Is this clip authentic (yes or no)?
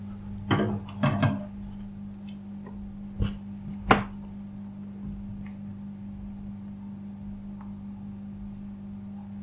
yes